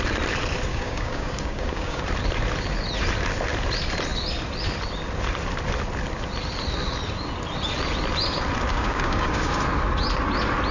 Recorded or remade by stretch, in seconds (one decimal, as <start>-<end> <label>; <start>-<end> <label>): 0.0-0.7 recorded; 0.7-2.0 remade; 2.0-8.7 recorded; 8.7-9.6 remade; 9.6-10.7 recorded